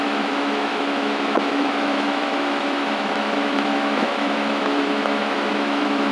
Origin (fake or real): fake